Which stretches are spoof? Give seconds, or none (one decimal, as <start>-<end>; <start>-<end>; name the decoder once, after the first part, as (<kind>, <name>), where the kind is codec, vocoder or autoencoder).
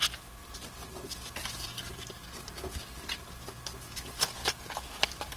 4.4-5.4 (codec, DAC)